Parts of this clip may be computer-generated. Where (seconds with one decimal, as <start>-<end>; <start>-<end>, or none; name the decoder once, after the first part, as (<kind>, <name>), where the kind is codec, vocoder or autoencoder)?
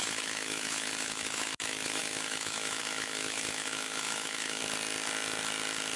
0.0-4.6 (autoencoder, DAC-VAE)